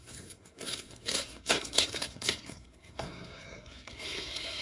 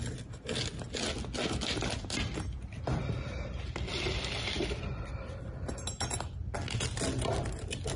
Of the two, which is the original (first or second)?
second